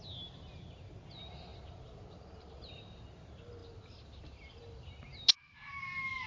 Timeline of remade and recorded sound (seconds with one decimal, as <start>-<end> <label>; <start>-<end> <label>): 0.0-6.3 recorded